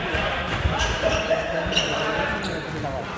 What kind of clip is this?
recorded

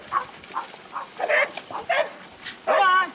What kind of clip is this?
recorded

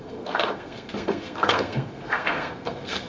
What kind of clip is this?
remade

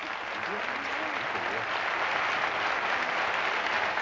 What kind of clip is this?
recorded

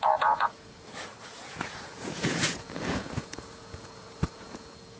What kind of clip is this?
remade